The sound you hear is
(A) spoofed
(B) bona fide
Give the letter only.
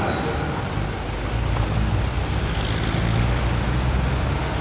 B